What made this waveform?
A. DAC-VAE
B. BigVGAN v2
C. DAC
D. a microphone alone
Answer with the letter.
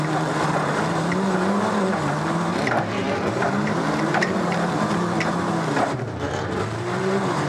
B